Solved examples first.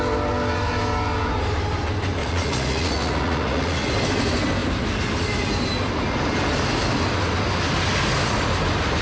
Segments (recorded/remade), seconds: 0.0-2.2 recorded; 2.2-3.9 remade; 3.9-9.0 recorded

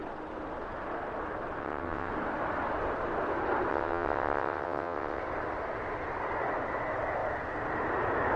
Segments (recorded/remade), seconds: 0.0-1.6 recorded; 1.6-2.1 remade; 2.1-3.7 recorded; 3.7-5.2 remade; 5.2-8.4 recorded

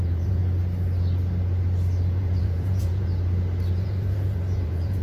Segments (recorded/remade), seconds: 0.0-0.4 remade; 0.4-2.1 recorded; 2.1-3.1 remade; 3.1-3.7 recorded; 3.7-5.0 remade

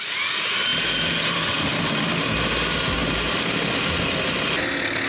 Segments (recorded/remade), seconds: 0.0-5.1 recorded

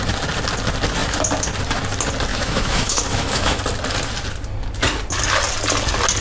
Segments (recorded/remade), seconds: 0.0-2.3 recorded; 2.3-3.6 remade; 3.6-6.2 recorded